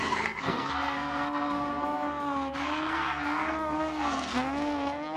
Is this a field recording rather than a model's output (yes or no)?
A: no